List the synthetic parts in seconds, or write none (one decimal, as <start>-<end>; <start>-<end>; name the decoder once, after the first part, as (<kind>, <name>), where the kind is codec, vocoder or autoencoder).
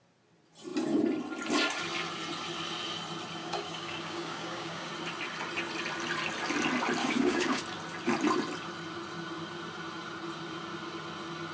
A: 3.4-4.9 (codec, DAC); 7.0-7.6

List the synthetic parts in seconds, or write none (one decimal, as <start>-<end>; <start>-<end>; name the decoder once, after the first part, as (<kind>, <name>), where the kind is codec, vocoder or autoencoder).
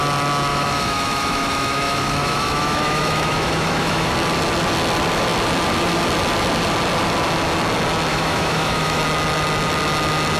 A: 0.5-4.1 (autoencoder, DAC-VAE); 8.1-9.0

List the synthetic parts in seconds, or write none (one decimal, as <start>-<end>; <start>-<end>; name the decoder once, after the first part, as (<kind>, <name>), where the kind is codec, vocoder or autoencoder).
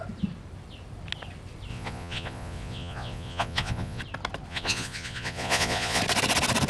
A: 1.7-4.0 (vocoder, Vocos); 4.5-6.0